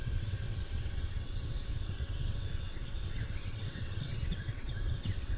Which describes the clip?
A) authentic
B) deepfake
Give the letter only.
B